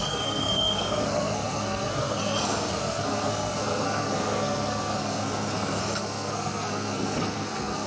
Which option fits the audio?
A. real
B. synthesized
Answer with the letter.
B